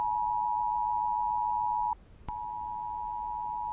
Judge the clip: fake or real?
real